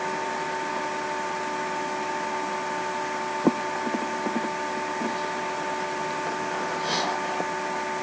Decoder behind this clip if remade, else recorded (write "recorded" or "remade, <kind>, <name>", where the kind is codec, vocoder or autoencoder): recorded